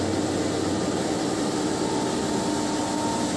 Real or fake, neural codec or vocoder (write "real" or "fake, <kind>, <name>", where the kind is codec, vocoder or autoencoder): real